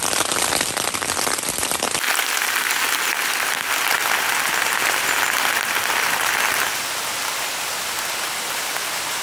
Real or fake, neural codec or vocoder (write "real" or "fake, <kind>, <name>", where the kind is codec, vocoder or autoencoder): real